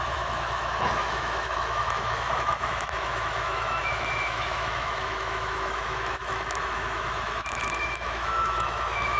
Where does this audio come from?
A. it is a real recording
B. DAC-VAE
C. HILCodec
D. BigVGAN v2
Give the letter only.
B